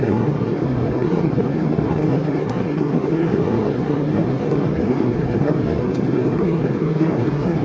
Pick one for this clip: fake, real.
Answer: fake